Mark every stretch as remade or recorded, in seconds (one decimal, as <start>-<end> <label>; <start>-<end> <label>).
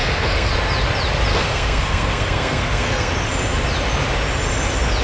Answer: 0.0-0.5 remade; 0.5-1.3 recorded; 1.3-3.1 remade; 3.1-5.0 recorded